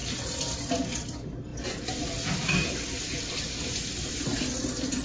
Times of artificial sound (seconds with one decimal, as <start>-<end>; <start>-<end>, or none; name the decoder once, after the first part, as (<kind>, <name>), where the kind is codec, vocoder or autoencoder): 0.0-0.7 (vocoder, BigVGAN v2)